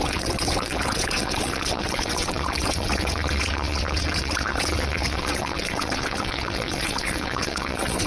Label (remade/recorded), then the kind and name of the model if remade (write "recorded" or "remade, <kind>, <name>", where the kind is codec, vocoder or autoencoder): remade, vocoder, WaveNeXt